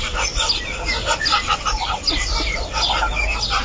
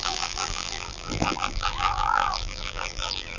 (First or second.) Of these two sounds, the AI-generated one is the second